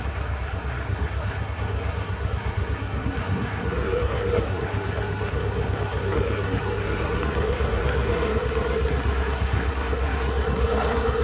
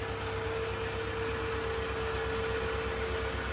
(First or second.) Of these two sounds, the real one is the second